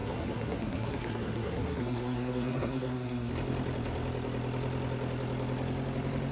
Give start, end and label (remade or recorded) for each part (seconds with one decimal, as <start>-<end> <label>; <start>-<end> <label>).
0.0-3.3 remade; 3.3-6.3 recorded